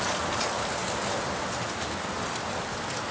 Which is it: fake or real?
real